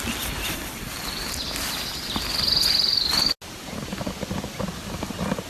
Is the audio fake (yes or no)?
no